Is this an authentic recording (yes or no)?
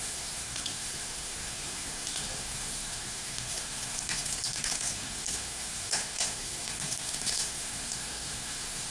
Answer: no